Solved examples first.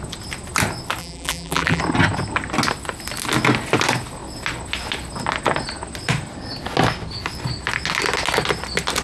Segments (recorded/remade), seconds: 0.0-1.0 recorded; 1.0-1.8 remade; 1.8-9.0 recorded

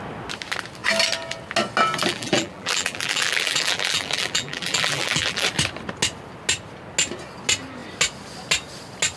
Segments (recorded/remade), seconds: 0.0-2.1 recorded; 2.1-5.5 remade; 5.5-9.2 recorded

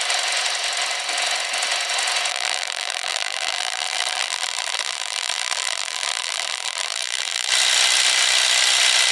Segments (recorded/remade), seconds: 0.0-2.3 recorded; 2.3-7.5 remade; 7.5-9.1 recorded

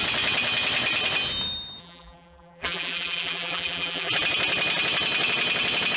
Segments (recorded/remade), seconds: 0.0-1.8 recorded; 1.8-4.1 remade; 4.1-6.0 recorded

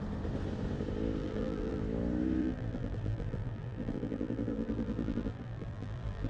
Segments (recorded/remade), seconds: 0.0-1.2 recorded; 1.2-1.8 remade; 1.8-2.4 recorded; 2.4-6.3 remade

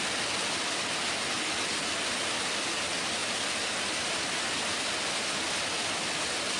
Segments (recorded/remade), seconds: 0.0-6.6 recorded

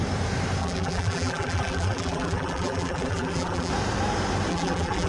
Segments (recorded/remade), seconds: 0.0-0.6 recorded; 0.6-3.7 remade; 3.7-4.5 recorded; 4.5-5.1 remade

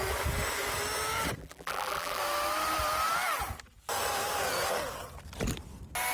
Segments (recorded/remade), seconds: 0.0-1.4 recorded; 1.4-2.2 remade; 2.2-6.1 recorded